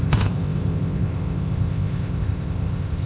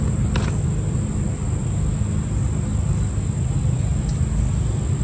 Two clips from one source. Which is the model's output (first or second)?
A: first